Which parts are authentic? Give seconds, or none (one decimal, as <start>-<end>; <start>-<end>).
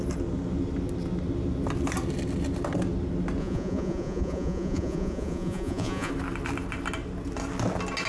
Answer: 0.0-3.4; 6.1-8.1